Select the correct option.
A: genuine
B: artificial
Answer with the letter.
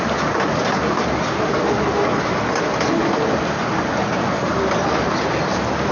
A